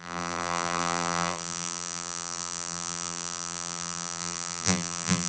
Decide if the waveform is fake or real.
fake